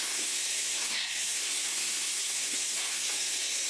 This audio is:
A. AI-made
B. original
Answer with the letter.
A